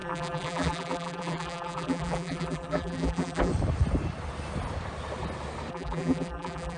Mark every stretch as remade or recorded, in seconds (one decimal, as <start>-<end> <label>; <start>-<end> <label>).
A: 0.0-3.5 remade; 3.5-5.7 recorded; 5.7-6.8 remade